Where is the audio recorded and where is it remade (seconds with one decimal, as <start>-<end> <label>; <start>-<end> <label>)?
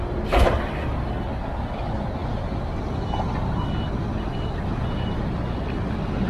0.0-6.3 recorded